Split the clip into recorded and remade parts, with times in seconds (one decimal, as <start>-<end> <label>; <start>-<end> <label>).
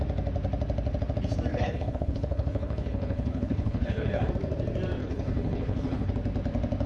0.0-1.5 recorded; 1.5-4.3 remade; 4.3-5.0 recorded; 5.0-6.1 remade; 6.1-6.9 recorded